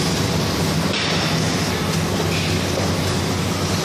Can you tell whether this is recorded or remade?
recorded